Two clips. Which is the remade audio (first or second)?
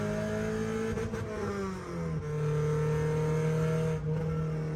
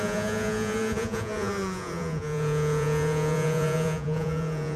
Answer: second